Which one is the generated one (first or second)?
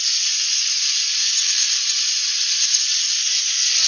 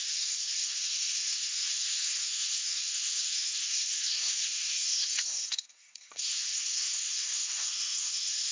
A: second